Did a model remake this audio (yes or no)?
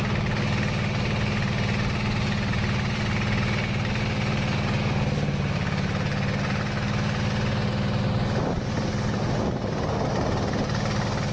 no